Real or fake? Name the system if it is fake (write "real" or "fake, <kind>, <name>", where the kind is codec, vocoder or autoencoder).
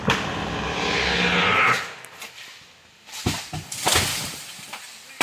real